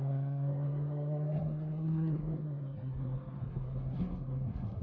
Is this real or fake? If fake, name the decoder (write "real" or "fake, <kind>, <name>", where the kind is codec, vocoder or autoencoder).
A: fake, codec, SNAC